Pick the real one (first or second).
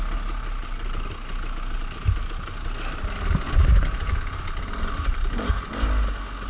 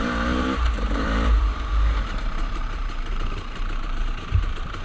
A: first